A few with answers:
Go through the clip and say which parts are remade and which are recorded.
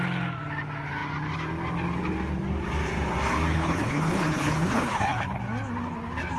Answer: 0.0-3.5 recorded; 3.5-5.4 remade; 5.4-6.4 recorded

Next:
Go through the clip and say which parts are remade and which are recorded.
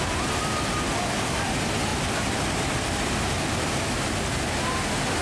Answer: 0.0-5.2 recorded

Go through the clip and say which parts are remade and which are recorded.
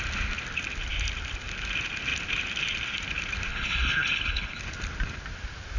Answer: 0.0-3.5 recorded; 3.5-4.6 remade; 4.6-5.8 recorded